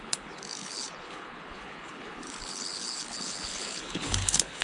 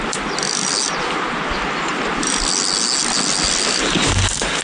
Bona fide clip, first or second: second